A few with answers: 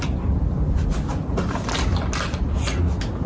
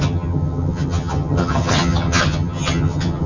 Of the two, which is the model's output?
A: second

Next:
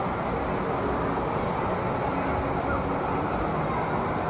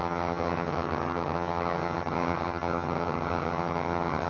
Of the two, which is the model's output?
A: second